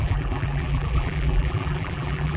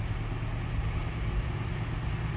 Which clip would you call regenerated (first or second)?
first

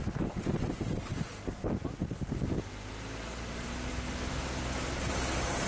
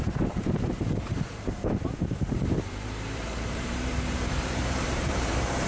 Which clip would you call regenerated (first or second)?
second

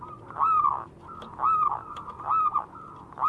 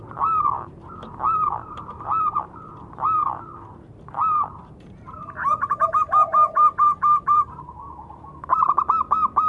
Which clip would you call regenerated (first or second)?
second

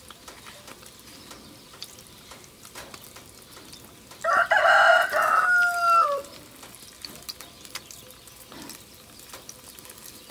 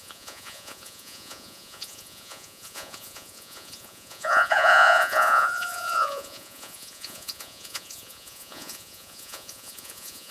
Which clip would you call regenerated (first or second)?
second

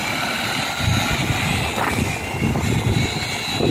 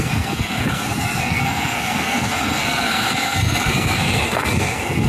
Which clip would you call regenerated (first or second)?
second